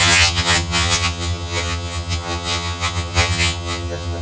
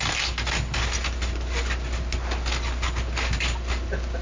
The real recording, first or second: second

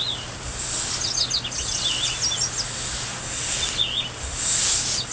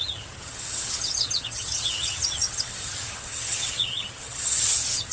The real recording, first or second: first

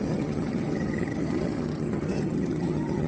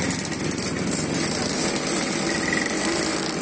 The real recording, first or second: second